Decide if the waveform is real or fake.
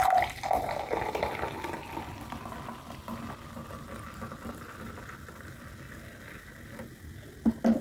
real